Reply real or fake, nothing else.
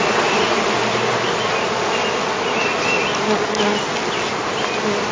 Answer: real